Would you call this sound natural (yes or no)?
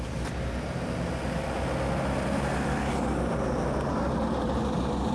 yes